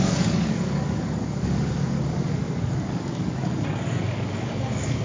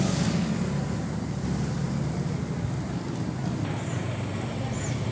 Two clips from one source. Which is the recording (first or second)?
second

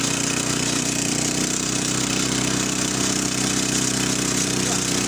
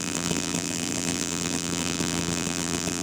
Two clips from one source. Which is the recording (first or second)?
first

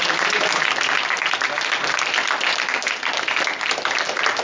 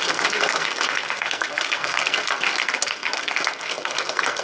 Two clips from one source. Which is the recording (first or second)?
first